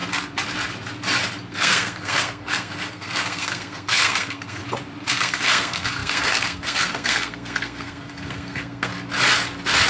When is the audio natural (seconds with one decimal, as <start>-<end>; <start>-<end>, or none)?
0.0-1.5; 4.6-5.2; 8.9-9.9